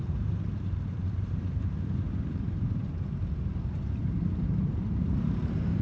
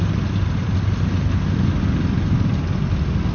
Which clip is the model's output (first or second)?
first